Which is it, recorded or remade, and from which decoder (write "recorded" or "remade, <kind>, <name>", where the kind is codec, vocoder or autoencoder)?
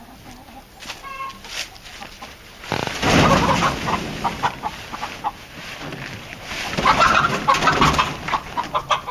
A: recorded